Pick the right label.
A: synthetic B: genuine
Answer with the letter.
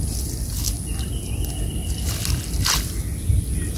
B